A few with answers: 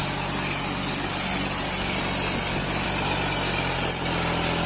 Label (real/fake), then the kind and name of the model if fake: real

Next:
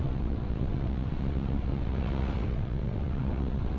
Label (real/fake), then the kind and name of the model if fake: fake, vocoder, WaveNeXt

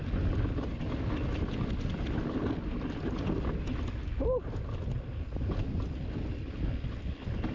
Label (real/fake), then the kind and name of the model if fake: real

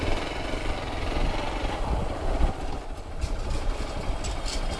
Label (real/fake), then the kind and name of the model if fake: real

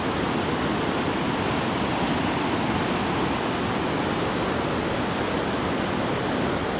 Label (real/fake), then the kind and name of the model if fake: real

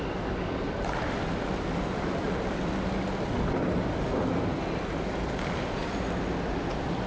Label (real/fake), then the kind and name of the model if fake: real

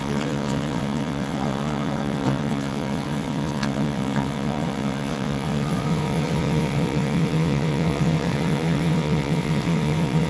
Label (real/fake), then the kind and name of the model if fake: fake, vocoder, WaveNeXt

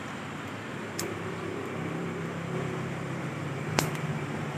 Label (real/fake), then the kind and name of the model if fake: fake, vocoder, BigVGAN v2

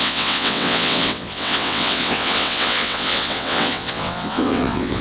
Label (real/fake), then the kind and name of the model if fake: fake, vocoder, WaveNeXt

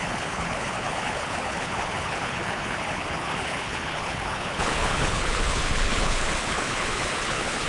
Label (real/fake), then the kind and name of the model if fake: fake, codec, HILCodec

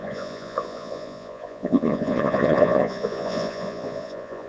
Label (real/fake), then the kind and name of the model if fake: fake, vocoder, Vocos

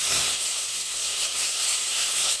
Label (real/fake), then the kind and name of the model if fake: fake, codec, SNAC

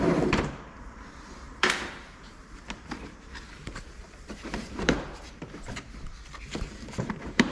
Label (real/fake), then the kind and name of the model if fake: fake, vocoder, BigVGAN v2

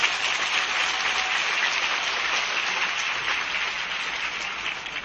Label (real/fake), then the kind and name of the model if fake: real